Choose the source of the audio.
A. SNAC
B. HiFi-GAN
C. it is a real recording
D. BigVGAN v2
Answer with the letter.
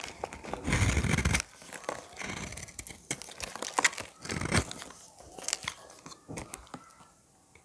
C